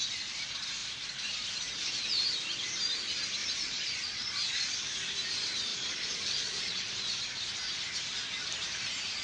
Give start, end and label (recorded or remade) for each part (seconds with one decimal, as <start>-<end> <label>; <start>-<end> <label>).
0.0-3.4 recorded; 3.4-4.7 remade; 4.7-5.7 recorded; 5.7-6.9 remade; 6.9-9.2 recorded